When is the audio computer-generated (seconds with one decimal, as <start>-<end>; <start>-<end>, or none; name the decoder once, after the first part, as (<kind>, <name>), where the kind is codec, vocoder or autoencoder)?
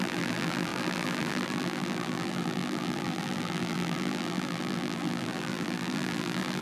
0.0-6.6 (vocoder, BigVGAN v2)